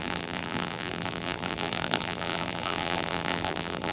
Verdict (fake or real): fake